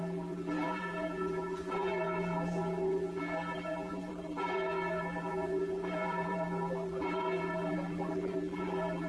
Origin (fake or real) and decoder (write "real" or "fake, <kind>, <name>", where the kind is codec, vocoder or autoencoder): fake, vocoder, BigVGAN v2